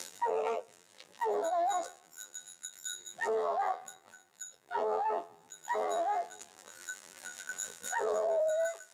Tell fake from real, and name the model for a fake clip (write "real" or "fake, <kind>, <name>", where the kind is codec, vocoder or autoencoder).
fake, vocoder, BigVGAN v2